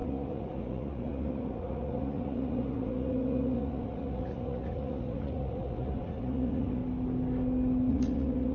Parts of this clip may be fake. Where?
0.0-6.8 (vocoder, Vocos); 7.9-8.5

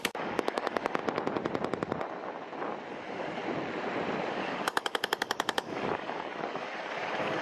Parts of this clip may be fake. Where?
0.0-1.0 (codec, DAC); 2.9-3.4; 4.3-7.4

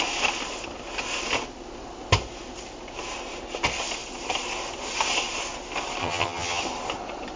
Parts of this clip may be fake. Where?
6.0-6.6 (vocoder, HiFi-GAN)

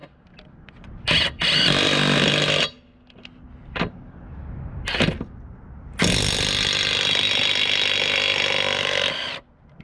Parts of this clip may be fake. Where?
none

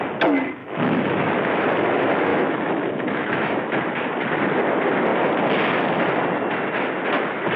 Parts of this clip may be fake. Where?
0.6-1.3 (autoencoder, DAC-VAE); 2.3-3.8

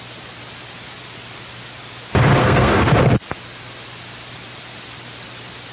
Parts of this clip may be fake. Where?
2.4-2.9 (codec, SNAC)